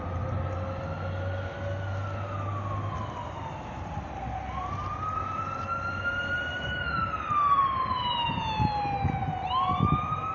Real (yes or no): yes